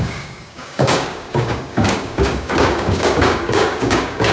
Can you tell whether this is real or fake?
fake